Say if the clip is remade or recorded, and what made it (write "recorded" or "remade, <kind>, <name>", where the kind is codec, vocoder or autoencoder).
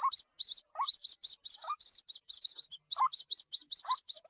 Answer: recorded